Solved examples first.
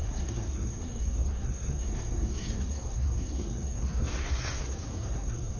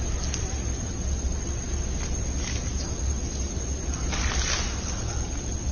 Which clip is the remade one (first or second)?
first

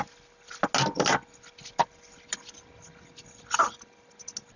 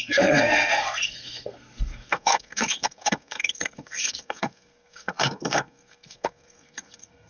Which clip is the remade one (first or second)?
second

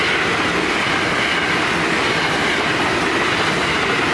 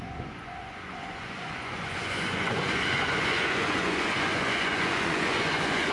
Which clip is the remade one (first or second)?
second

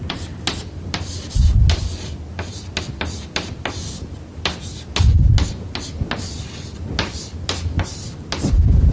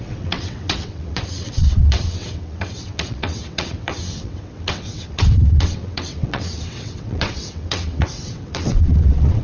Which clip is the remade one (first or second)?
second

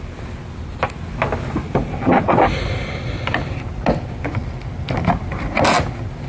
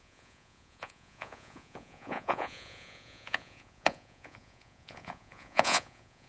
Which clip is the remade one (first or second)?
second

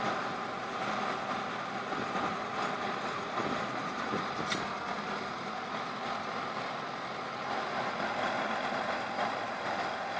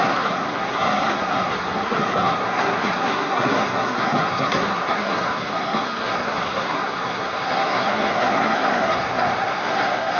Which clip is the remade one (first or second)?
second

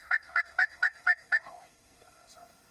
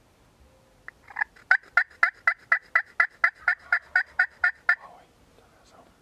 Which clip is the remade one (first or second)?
first